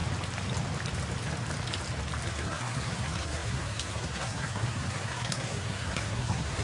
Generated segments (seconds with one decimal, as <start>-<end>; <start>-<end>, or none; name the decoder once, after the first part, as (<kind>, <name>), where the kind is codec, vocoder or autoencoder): 2.3-6.6 (codec, SNAC)